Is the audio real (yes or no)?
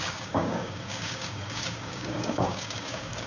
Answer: no